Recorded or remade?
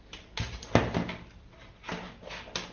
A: recorded